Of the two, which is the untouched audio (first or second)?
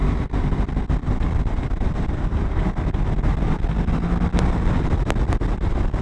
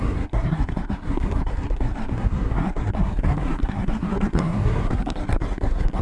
first